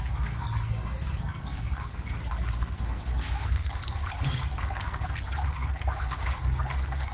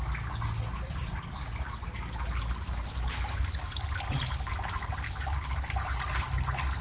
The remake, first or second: first